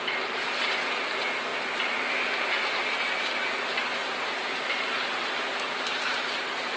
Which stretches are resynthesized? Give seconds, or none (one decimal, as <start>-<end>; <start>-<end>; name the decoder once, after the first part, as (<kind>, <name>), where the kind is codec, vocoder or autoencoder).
none

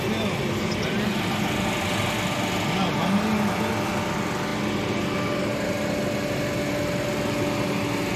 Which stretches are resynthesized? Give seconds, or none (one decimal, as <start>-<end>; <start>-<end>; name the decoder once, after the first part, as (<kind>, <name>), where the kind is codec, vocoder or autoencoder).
none

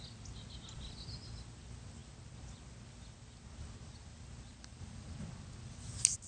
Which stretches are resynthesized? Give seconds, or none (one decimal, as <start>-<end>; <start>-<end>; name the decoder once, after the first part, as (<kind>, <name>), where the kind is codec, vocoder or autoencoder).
4.5-5.2 (vocoder, BigVGAN v2)

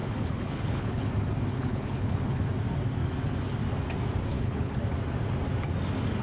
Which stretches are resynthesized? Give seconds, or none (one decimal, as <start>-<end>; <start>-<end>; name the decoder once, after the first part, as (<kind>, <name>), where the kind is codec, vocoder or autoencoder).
0.0-1.1 (codec, HILCodec); 1.5-2.4; 4.3-4.8

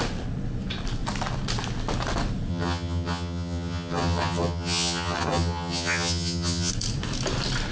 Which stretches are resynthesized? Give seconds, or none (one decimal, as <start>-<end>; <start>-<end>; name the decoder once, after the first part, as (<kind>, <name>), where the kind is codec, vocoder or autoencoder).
2.5-6.7 (vocoder, HiFi-GAN)

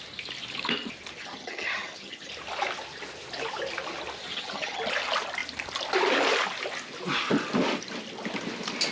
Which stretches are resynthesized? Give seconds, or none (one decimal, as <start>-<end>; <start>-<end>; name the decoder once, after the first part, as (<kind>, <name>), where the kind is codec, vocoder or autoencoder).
1.2-2.3 (vocoder, HiFi-GAN); 4.3-4.8